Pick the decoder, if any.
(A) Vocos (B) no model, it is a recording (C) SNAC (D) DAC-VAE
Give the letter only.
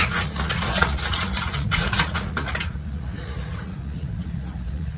A